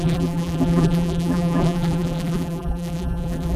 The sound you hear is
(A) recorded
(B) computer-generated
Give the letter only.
B